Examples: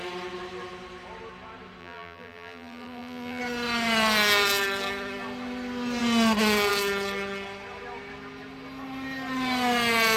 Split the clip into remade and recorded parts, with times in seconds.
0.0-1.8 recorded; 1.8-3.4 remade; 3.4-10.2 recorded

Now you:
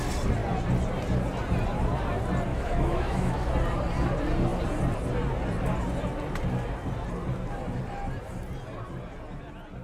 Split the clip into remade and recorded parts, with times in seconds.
0.0-2.5 recorded; 2.5-3.5 remade; 3.5-9.8 recorded

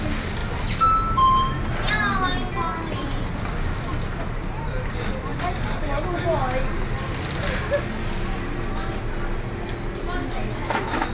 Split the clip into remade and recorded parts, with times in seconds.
0.0-10.4 recorded; 10.4-11.1 remade

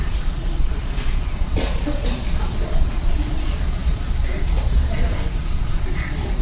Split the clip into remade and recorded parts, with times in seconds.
0.0-6.4 remade

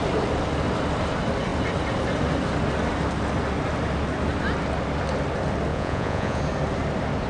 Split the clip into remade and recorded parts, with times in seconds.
0.0-5.7 recorded; 5.7-6.4 remade; 6.4-7.3 recorded

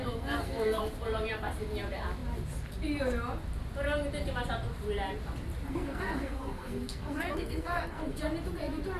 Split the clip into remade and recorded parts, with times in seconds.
0.0-0.8 remade; 0.8-5.7 recorded; 5.7-8.2 remade; 8.2-9.0 recorded

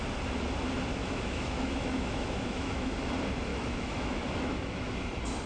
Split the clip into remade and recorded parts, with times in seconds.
0.0-1.0 recorded; 1.0-3.1 remade; 3.1-3.5 recorded; 3.5-5.0 remade; 5.0-5.5 recorded

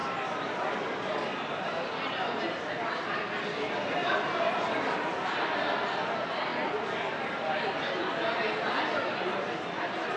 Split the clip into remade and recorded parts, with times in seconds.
0.0-10.2 recorded